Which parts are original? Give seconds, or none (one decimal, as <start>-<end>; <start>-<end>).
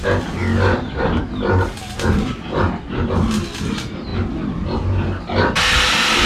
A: 0.0-6.3